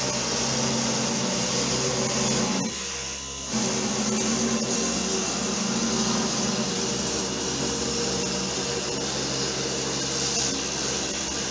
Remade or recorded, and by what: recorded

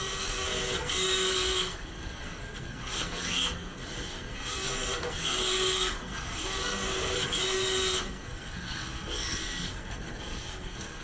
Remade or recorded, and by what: remade, codec, SNAC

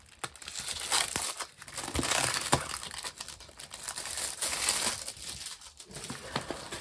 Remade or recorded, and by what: recorded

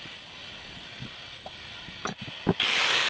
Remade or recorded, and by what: recorded